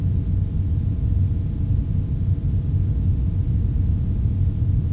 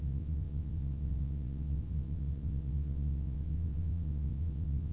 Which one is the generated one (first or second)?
second